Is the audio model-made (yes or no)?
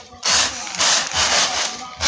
no